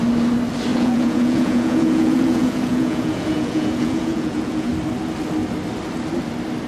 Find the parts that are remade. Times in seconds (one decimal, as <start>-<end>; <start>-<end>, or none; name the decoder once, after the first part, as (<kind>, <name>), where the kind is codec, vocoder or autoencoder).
0.7-4.7 (vocoder, Vocos)